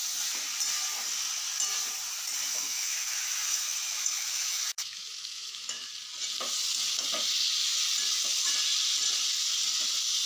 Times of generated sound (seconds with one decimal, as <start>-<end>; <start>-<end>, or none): 2.5-5.9